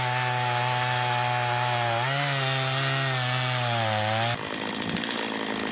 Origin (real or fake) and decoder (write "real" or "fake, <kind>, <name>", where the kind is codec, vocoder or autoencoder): real